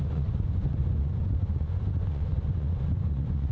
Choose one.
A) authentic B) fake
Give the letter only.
B